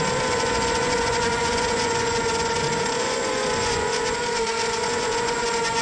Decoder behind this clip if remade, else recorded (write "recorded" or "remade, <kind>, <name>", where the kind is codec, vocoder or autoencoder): remade, vocoder, Vocos